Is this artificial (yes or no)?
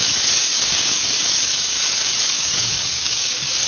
yes